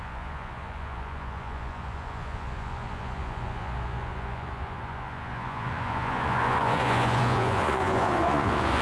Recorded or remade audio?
remade